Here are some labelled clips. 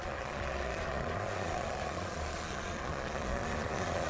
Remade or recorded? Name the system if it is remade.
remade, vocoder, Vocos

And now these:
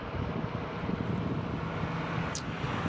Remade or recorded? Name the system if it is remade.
recorded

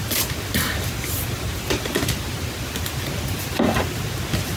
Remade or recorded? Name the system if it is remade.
recorded